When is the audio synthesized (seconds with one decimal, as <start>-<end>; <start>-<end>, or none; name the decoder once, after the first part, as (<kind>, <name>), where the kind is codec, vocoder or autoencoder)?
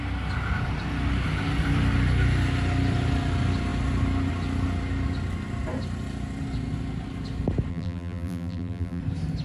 7.7-9.0 (vocoder, BigVGAN v2)